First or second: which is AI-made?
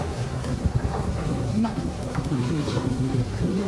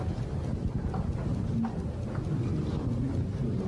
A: first